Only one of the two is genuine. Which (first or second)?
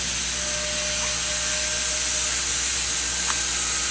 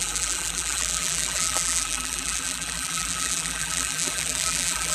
first